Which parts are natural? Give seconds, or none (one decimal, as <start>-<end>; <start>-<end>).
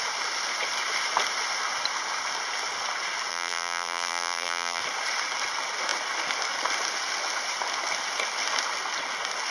0.0-3.3; 4.8-9.5